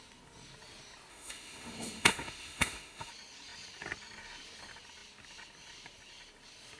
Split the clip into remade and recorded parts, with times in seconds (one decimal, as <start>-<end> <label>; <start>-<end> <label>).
0.0-1.1 recorded; 1.1-3.1 remade; 3.1-6.8 recorded